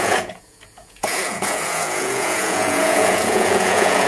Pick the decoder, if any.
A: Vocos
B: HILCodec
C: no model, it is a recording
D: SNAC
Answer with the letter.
A